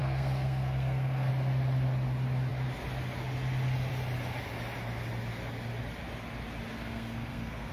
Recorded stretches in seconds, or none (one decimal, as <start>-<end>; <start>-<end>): 1.3-6.7